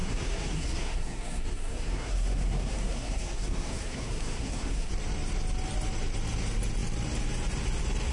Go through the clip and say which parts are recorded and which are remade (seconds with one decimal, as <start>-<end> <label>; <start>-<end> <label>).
0.0-4.9 remade; 4.9-8.1 recorded